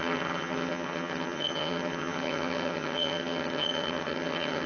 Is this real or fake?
fake